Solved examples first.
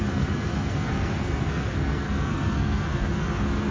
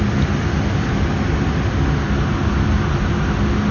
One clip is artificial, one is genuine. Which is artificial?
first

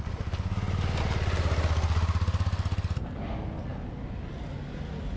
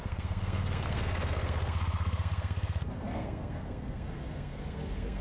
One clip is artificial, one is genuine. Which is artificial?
second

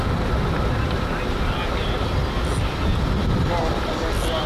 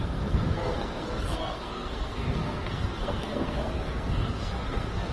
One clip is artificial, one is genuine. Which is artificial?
second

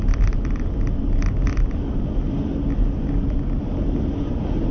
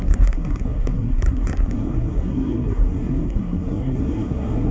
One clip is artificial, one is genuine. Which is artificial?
second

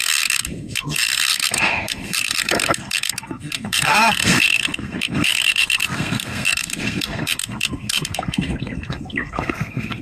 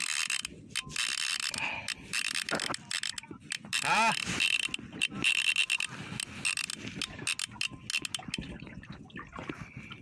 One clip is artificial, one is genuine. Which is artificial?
first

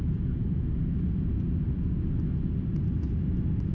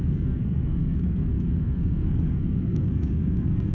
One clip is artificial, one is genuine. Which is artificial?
second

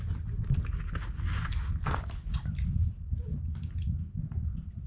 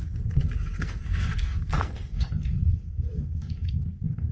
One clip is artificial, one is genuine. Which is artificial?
second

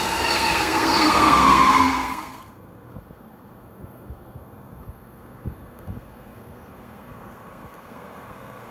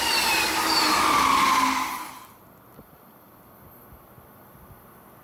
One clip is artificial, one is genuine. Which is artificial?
first